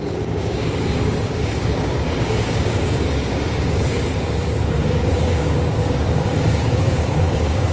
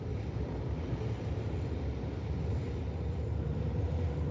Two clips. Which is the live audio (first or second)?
second